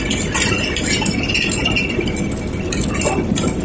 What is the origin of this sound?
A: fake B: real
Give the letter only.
B